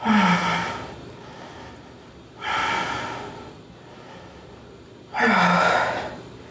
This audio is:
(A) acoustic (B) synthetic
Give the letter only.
A